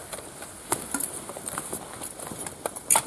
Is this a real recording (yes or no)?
no